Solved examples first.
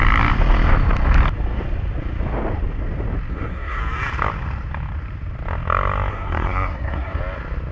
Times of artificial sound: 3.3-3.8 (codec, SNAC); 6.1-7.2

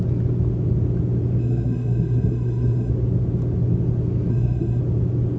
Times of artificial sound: 1.4-2.9 (codec, SNAC); 4.3-4.8

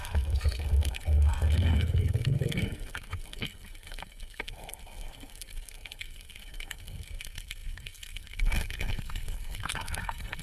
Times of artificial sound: 0.0-10.4 (codec, SNAC)

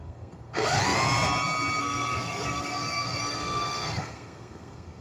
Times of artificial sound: 0.0-0.8 (codec, SNAC); 1.8-5.0

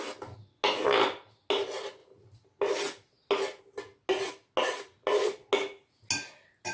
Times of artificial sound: none